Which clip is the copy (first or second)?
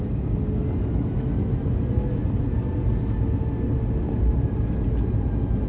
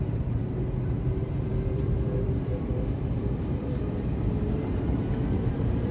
second